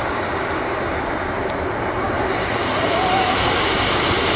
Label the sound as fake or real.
real